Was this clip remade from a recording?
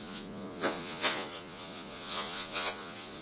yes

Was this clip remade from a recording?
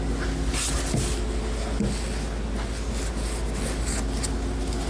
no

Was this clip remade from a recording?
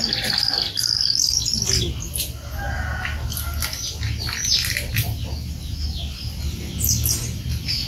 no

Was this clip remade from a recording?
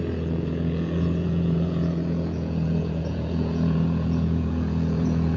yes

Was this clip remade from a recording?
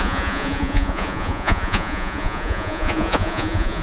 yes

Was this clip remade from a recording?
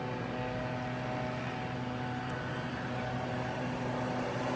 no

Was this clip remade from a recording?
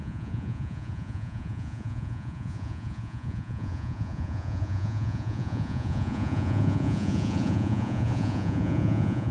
yes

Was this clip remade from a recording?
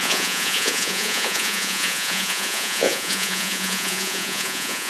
yes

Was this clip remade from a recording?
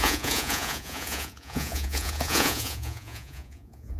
yes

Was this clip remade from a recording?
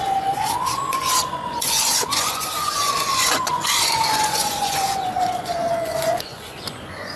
yes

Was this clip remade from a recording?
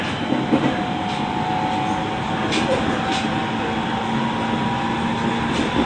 no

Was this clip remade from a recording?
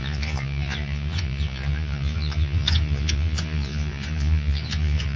yes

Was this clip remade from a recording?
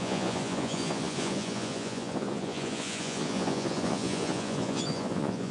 yes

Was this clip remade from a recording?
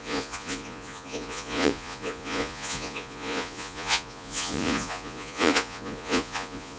yes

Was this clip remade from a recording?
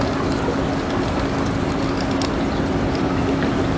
no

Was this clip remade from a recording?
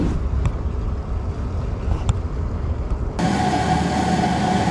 no